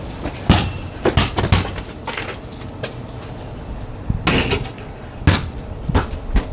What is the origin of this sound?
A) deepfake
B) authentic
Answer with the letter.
B